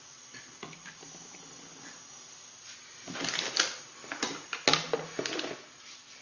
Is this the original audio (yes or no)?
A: yes